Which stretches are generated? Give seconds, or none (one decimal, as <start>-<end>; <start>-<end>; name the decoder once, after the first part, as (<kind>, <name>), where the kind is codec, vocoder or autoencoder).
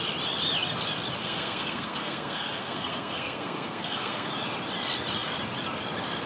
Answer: 1.2-4.3 (codec, SNAC)